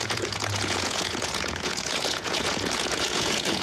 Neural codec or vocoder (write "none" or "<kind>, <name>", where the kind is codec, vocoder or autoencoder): vocoder, Vocos